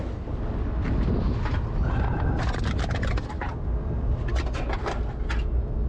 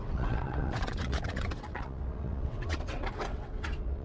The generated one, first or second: second